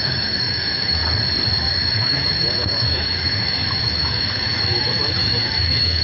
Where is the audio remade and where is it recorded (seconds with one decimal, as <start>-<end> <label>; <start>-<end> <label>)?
0.0-1.0 remade; 1.0-1.9 recorded; 1.9-6.0 remade